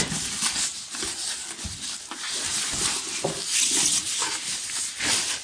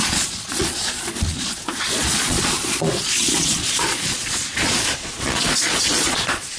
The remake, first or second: second